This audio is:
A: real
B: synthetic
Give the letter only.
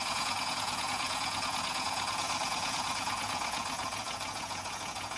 B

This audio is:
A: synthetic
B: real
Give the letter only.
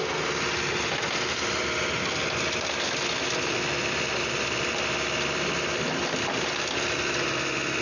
B